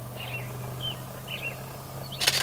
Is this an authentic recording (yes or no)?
yes